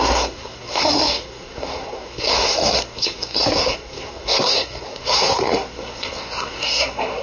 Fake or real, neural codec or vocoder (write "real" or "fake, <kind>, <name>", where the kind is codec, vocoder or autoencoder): fake, codec, SNAC